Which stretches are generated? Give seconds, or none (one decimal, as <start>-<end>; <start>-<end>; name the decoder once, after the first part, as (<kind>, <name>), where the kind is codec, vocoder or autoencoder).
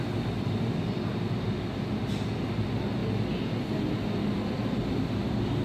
none